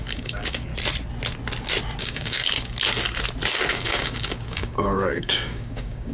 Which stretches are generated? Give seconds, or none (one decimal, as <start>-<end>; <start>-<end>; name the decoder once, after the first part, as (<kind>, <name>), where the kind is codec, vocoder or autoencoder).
0.0-0.7 (codec, DAC); 2.0-2.4; 3.7-6.1